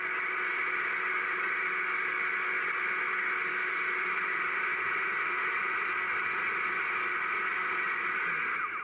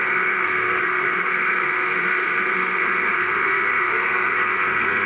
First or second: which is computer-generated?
second